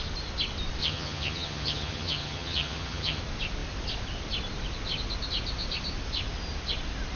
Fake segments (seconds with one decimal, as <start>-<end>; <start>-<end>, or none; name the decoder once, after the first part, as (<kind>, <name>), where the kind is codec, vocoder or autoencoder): 0.8-3.2 (vocoder, HiFi-GAN)